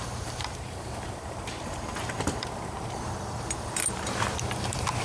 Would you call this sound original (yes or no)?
no